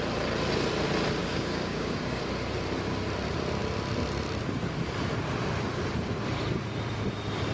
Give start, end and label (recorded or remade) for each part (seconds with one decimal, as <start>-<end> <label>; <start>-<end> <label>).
0.0-1.2 recorded; 1.2-2.2 remade; 2.2-7.5 recorded